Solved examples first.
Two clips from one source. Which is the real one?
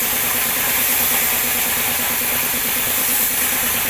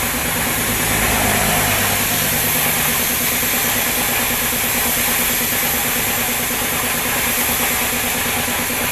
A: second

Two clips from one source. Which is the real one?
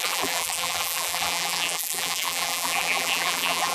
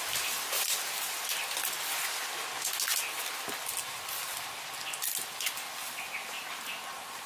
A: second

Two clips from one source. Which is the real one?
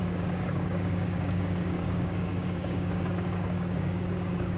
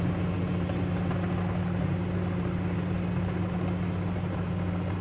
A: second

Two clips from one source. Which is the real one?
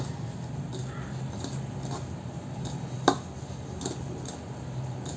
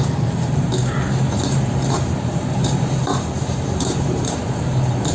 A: first